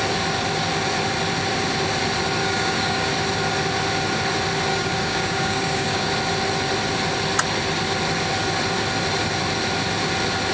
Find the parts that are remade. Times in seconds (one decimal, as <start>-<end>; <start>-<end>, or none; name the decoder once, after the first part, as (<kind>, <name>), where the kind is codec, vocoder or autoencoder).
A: 2.4-3.1 (codec, DAC); 4.7-6.1